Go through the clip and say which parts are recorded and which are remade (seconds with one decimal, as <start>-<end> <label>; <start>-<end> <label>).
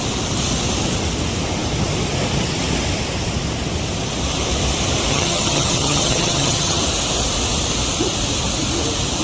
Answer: 0.0-5.1 recorded; 5.1-6.8 remade; 6.8-9.2 recorded